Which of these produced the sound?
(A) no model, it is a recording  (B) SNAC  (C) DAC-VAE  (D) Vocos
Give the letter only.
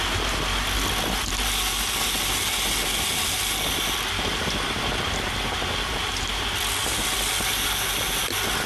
A